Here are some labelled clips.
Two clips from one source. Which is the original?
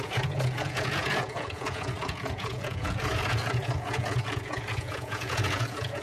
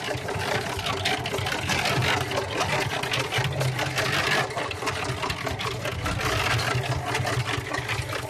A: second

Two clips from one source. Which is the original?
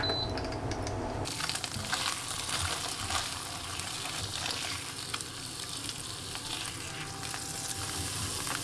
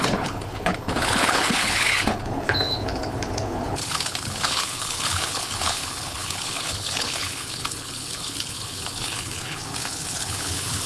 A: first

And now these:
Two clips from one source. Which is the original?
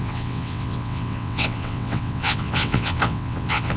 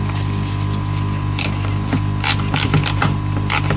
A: second